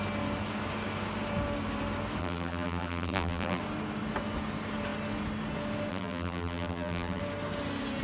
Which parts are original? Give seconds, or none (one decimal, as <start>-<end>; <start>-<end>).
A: 0.0-2.2; 3.6-5.9; 7.2-8.0